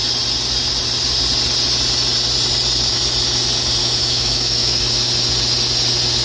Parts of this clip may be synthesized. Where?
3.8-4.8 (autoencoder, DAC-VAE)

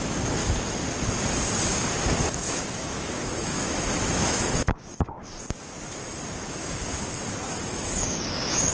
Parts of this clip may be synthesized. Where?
0.0-0.4 (autoencoder, DAC-VAE); 2.5-5.2; 6.5-6.9; 7.7-8.7

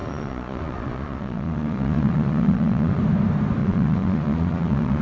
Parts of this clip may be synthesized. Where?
0.0-3.0 (vocoder, Vocos); 3.6-5.0

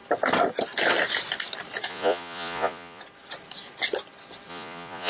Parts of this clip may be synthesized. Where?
1.9-3.0 (vocoder, Vocos); 4.5-5.1

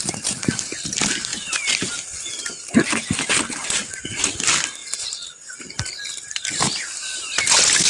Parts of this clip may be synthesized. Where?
none

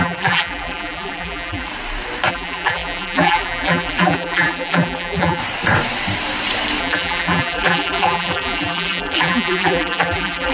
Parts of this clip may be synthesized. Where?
0.0-1.7 (vocoder, BigVGAN v2); 2.3-5.4; 6.8-10.5

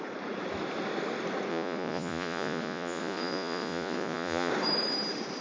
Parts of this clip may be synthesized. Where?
1.5-4.5 (vocoder, Vocos)

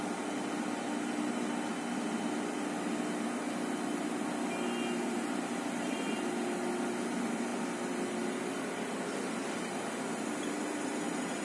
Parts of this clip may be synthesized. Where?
none